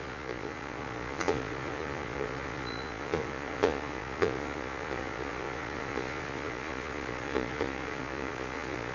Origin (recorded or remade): remade